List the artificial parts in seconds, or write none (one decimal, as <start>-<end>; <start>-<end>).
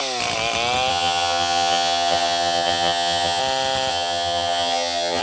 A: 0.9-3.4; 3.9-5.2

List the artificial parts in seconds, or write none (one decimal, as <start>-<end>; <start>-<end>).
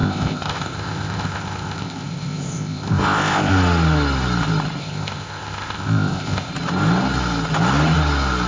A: 0.0-3.5; 4.8-6.5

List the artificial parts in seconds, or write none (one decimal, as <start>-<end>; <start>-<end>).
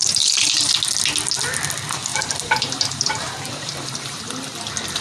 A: 0.0-0.7; 2.1-4.2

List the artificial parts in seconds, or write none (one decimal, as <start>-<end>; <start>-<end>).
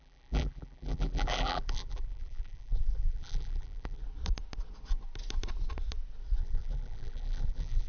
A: 0.0-4.0; 6.4-7.9